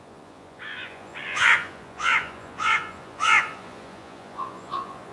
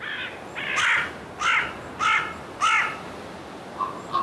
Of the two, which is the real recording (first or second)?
second